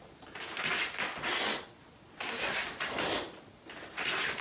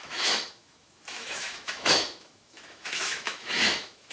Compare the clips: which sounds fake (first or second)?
second